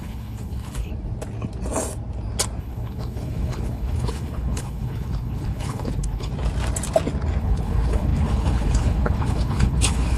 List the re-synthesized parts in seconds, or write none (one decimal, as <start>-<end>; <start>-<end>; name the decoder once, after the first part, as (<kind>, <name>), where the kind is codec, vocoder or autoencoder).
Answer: 0.0-0.9 (codec, HILCodec); 2.6-6.3; 7.4-10.2